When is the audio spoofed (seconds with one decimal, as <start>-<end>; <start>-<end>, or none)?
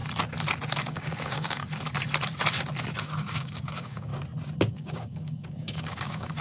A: 0.8-1.6; 3.0-4.1; 4.7-6.4